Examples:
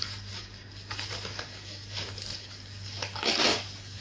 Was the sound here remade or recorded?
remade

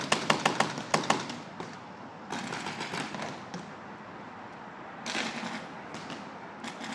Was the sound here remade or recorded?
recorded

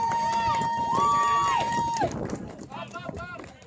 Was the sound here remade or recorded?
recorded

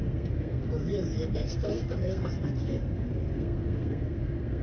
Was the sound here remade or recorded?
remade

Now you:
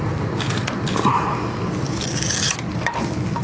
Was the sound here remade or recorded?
recorded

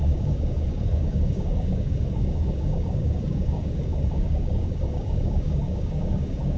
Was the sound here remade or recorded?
remade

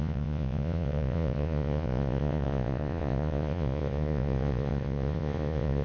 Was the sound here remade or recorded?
remade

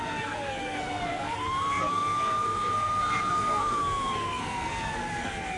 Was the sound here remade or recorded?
remade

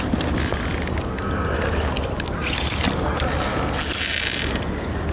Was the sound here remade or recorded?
recorded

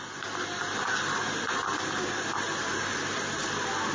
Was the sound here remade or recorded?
recorded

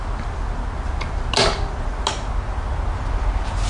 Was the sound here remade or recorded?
recorded